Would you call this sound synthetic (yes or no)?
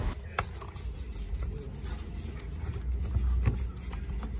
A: no